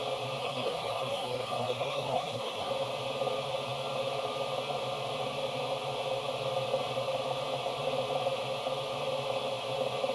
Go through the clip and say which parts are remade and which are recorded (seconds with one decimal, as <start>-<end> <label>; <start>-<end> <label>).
0.0-0.4 recorded; 0.4-2.7 remade; 2.7-10.1 recorded